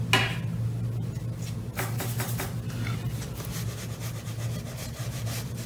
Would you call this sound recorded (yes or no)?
yes